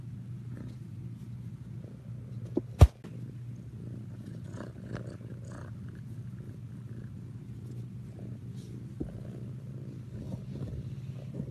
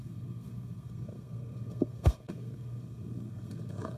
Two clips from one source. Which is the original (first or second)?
first